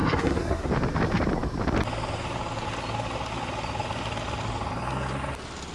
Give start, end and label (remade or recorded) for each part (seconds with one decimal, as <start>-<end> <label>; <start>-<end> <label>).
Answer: 0.0-0.7 remade; 0.7-5.7 recorded